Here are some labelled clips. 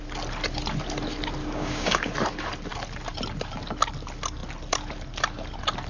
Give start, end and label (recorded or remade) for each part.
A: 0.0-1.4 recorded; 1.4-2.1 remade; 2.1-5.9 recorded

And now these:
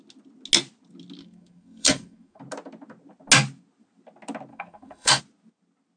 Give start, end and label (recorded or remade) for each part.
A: 0.0-1.2 recorded; 1.2-2.4 remade; 2.4-4.5 recorded; 4.5-5.2 remade; 5.2-6.0 recorded

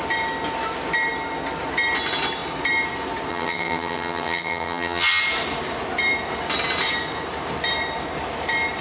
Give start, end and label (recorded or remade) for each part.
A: 0.0-3.3 recorded; 3.3-5.2 remade; 5.2-8.8 recorded

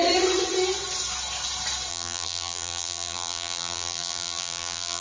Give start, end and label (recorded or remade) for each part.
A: 0.0-1.9 recorded; 1.9-5.0 remade

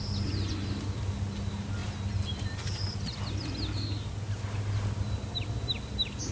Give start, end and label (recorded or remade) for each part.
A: 0.0-6.3 recorded

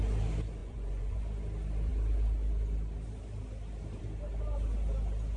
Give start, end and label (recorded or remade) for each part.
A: 0.0-0.6 recorded; 0.6-1.2 remade; 1.2-5.4 recorded

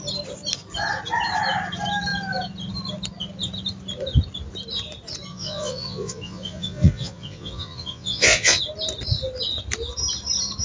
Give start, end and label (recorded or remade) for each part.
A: 0.0-5.3 recorded; 5.3-8.6 remade; 8.6-10.6 recorded